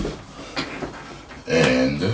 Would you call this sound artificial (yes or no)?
no